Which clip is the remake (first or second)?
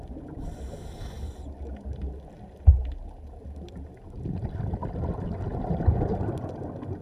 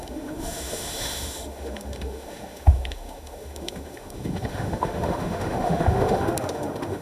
second